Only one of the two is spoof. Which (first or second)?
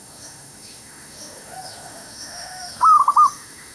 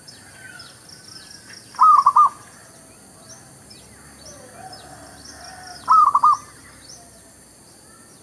first